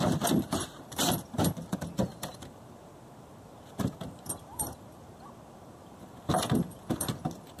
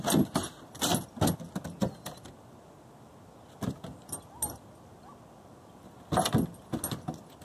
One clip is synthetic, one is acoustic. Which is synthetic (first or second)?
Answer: first